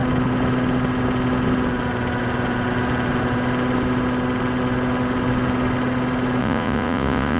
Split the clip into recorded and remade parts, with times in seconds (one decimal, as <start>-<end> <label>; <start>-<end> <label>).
0.0-6.4 recorded; 6.4-7.4 remade